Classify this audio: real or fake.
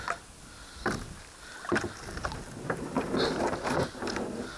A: real